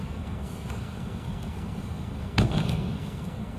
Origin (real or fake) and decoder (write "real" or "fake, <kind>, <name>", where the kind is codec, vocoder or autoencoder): fake, codec, SNAC